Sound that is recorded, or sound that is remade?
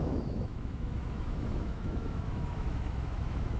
remade